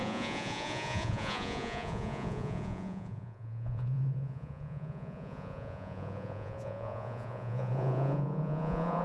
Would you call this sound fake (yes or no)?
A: yes